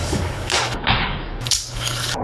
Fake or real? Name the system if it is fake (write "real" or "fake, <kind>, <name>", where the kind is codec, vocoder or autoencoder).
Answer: fake, codec, DAC